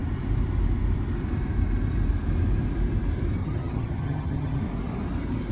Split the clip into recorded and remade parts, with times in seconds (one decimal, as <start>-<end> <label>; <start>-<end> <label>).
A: 0.0-3.4 recorded; 3.4-4.6 remade; 4.6-5.5 recorded

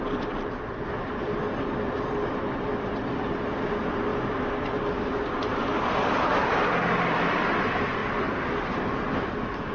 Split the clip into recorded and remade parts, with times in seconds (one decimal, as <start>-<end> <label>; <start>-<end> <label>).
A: 0.0-9.7 recorded

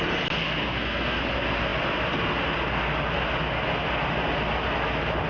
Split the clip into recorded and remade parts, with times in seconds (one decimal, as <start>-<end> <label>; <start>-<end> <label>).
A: 0.0-0.4 recorded; 0.4-1.2 remade; 1.2-5.3 recorded